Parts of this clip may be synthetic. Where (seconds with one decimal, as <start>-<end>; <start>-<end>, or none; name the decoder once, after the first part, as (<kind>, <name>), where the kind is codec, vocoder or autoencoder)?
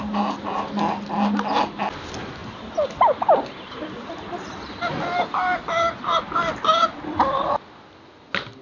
none